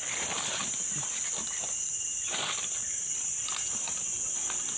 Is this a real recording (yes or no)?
yes